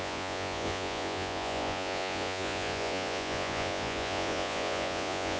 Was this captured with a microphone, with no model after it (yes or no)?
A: no